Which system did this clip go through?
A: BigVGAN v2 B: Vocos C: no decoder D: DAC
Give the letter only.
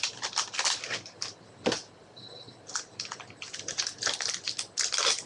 C